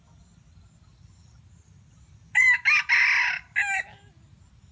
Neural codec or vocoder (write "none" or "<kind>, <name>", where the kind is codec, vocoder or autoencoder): none